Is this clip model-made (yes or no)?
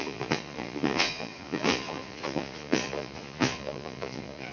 yes